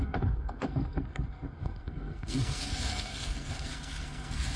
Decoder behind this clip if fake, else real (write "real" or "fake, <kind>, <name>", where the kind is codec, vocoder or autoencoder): fake, codec, SNAC